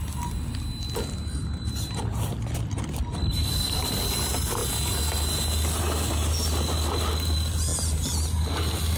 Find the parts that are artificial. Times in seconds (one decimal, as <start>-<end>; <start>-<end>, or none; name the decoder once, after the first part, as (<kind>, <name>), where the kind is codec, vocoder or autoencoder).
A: 1.4-3.9 (vocoder, BigVGAN v2)